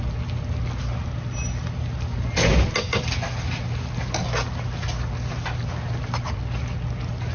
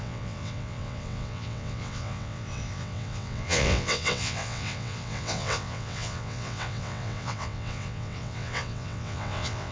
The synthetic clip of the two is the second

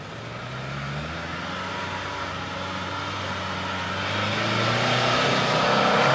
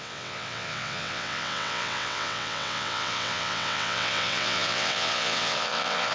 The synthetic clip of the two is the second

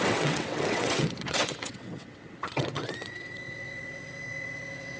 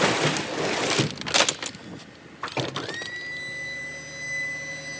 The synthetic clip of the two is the first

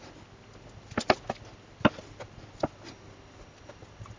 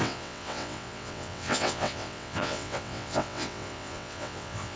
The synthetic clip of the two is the second